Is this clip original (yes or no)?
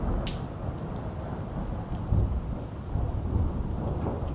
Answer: yes